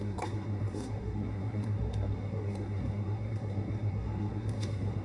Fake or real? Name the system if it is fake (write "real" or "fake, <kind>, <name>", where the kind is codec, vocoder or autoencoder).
fake, codec, SNAC